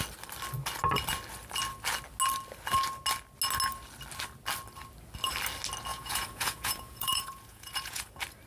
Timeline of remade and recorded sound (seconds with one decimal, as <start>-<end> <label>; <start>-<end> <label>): 0.0-5.9 recorded; 5.9-8.1 remade; 8.1-8.5 recorded

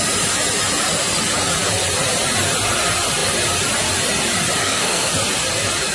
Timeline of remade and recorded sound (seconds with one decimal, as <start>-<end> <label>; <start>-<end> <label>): 0.0-4.6 recorded; 4.6-5.1 remade; 5.1-5.9 recorded

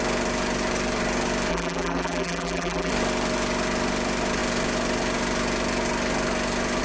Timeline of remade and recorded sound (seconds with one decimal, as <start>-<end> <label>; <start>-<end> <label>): 0.0-1.5 recorded; 1.5-2.9 remade; 2.9-6.8 recorded

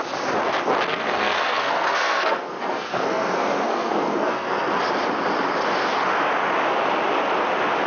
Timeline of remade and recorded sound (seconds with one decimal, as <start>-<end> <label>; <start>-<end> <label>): 0.0-0.9 recorded; 0.9-4.7 remade; 4.7-7.9 recorded

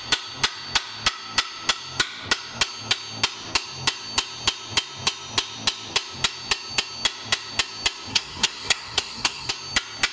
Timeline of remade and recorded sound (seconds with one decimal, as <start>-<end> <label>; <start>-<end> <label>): 0.0-8.1 recorded; 8.1-9.5 remade; 9.5-10.1 recorded

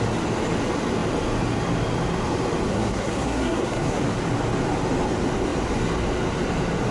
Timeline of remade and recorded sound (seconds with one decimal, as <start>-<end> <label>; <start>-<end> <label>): 0.0-2.7 recorded; 2.7-4.0 remade; 4.0-6.9 recorded

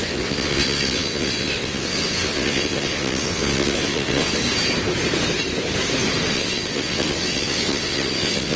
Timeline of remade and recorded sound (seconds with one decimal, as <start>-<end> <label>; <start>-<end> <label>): 0.0-4.4 remade; 4.4-6.3 recorded; 6.3-8.6 remade

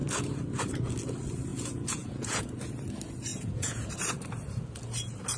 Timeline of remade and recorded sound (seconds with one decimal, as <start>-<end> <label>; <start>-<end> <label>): 0.0-1.5 recorded; 1.5-2.7 remade; 2.7-3.3 recorded; 3.3-3.9 remade; 3.9-5.4 recorded